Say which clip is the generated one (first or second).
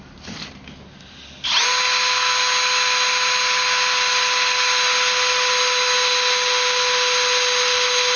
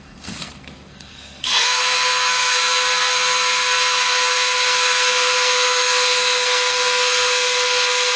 second